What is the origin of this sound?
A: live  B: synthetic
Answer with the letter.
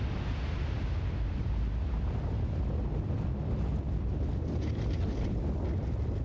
A